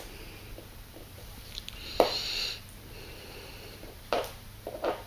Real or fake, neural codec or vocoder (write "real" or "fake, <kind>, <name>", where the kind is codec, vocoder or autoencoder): fake, vocoder, BigVGAN v2